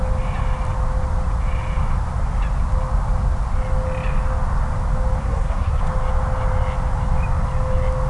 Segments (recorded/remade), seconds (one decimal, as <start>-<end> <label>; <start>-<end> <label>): 0.0-5.2 recorded; 5.2-5.8 remade; 5.8-8.1 recorded